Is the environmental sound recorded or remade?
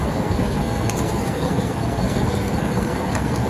remade